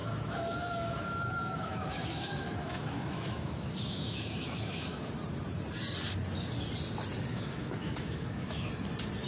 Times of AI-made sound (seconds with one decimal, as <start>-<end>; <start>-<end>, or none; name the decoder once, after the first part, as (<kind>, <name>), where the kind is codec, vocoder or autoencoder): 0.0-5.1 (autoencoder, DAC-VAE); 7.3-8.7